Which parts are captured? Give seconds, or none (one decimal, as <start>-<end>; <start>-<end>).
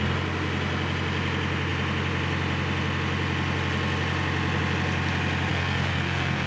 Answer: 0.0-5.5